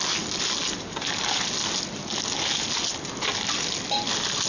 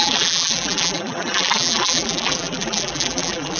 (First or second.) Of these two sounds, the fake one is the second